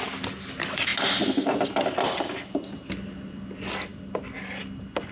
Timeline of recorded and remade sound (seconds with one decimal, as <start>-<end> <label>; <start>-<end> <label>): 0.0-5.1 recorded